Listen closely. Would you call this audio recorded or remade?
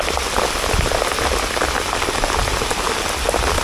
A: recorded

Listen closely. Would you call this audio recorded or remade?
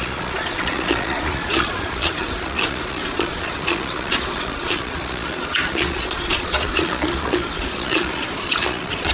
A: remade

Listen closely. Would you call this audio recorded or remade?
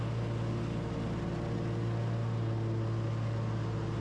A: recorded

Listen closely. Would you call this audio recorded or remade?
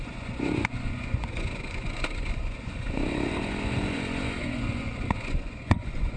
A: remade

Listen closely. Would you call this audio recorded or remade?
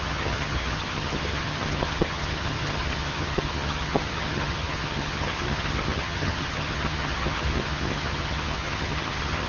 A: remade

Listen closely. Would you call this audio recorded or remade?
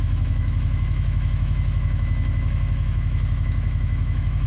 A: remade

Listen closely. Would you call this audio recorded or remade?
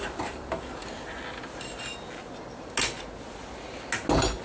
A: recorded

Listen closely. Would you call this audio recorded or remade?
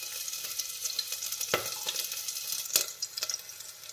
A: recorded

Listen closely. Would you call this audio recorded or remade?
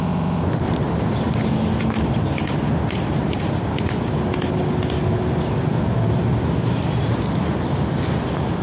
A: recorded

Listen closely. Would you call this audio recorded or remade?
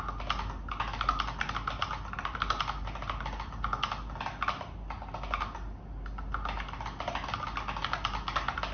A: recorded